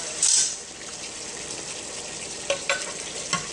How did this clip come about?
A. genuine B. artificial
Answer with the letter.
A